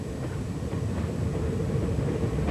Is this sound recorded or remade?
recorded